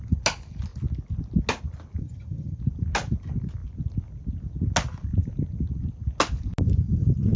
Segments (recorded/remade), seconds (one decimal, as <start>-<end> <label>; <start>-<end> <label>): 0.0-2.0 recorded; 2.0-2.6 remade; 2.6-7.4 recorded